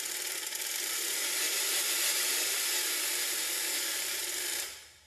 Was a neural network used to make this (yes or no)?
yes